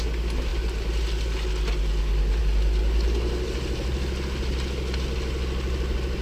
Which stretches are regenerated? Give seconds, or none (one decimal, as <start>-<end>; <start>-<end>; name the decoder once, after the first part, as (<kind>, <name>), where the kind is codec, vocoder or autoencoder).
none